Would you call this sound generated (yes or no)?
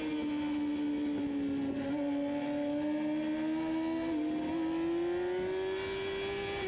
no